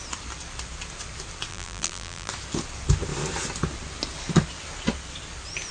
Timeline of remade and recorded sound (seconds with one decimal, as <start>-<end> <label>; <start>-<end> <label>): 0.0-1.5 recorded; 1.5-2.3 remade; 2.3-5.7 recorded